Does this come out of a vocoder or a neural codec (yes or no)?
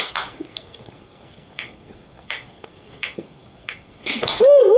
yes